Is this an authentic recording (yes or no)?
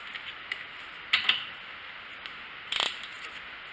yes